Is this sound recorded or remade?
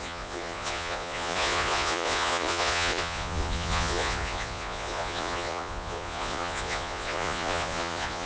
remade